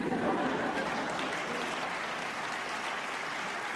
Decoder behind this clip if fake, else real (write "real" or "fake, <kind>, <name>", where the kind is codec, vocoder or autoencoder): real